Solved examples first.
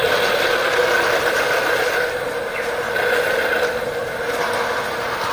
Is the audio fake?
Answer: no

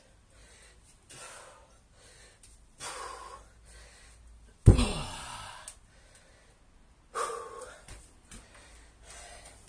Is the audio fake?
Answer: no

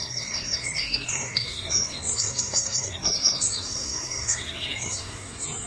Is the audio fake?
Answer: yes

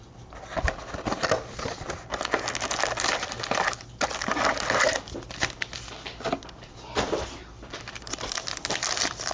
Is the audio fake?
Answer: no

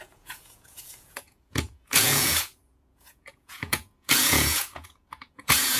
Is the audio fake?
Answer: yes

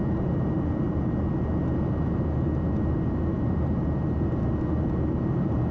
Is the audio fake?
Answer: yes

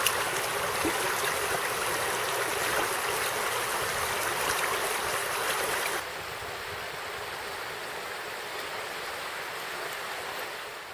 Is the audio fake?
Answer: no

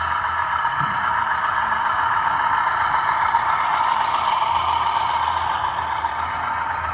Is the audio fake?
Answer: no